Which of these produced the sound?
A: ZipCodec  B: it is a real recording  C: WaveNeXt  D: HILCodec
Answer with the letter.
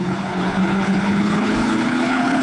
D